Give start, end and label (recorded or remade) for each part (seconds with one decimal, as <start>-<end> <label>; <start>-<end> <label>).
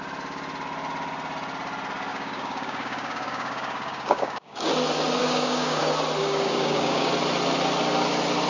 0.0-2.1 recorded; 2.1-4.7 remade; 4.7-5.2 recorded; 5.2-5.8 remade; 5.8-6.2 recorded; 6.2-7.1 remade; 7.1-8.5 recorded